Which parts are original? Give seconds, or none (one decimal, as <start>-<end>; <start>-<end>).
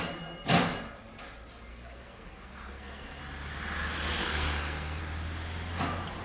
0.0-1.7; 3.2-4.2; 5.0-6.2